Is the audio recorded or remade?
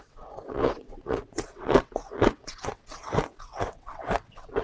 remade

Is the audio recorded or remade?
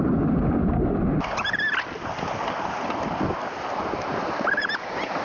recorded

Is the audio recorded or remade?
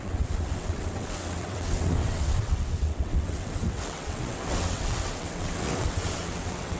remade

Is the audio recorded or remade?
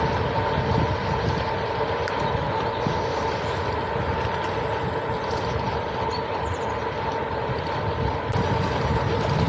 recorded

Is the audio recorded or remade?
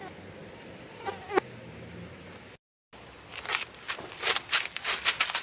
recorded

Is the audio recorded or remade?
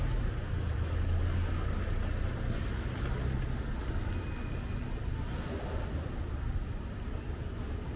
recorded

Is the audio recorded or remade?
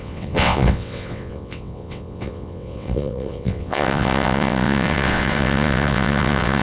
remade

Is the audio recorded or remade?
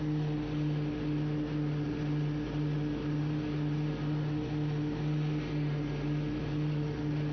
recorded